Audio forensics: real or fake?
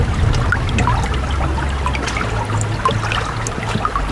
real